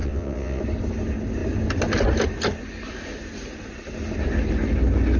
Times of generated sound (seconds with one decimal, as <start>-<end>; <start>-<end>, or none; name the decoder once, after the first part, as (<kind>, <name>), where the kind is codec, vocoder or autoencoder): 0.0-0.6 (vocoder, WaveNeXt)